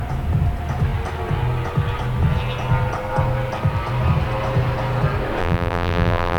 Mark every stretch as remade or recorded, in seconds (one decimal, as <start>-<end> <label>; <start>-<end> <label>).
0.0-5.4 recorded; 5.4-6.4 remade